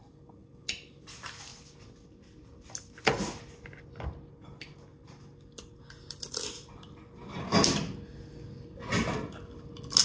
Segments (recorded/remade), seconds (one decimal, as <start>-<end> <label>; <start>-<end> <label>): 0.0-10.0 recorded